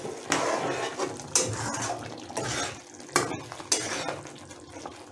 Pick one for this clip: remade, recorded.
recorded